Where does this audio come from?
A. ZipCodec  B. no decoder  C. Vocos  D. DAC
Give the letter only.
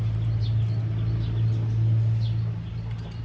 B